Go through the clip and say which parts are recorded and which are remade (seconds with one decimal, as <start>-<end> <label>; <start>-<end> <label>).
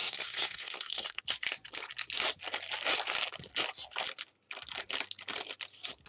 0.0-1.2 remade; 1.2-6.1 recorded